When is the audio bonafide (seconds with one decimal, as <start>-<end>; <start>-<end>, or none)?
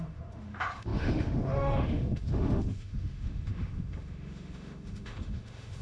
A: none